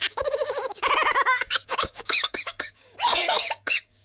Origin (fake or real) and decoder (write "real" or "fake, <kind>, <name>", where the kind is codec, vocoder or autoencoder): fake, codec, DAC